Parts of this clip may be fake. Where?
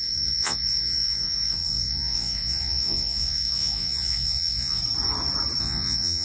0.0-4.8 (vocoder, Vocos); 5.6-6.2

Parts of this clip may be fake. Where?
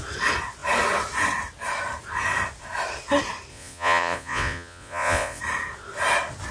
3.5-5.4 (vocoder, Vocos)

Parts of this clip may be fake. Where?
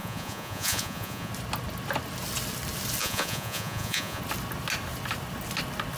0.0-1.3 (vocoder, Vocos); 3.0-4.2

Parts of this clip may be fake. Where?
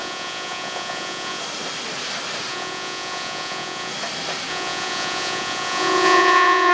0.0-1.4 (vocoder, Vocos); 2.5-3.9; 4.5-6.7